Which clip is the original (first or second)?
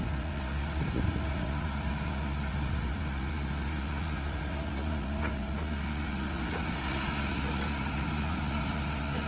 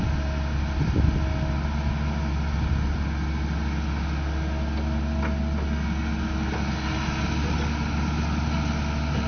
second